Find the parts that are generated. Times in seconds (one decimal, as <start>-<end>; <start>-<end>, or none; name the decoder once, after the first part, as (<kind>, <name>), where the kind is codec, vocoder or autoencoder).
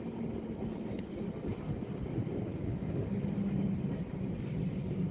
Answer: 2.5-3.2 (codec, DAC)